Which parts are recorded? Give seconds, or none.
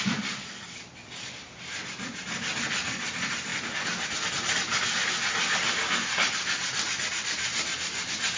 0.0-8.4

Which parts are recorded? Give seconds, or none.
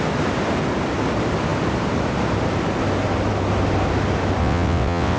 0.0-4.4